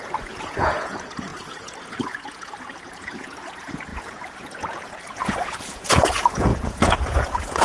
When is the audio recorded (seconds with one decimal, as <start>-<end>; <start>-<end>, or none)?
none